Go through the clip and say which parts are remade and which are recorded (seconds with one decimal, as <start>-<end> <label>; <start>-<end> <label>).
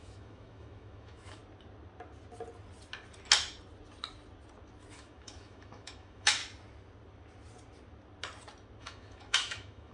0.0-1.4 remade; 1.4-4.9 recorded; 4.9-6.4 remade; 6.4-8.8 recorded; 8.8-9.9 remade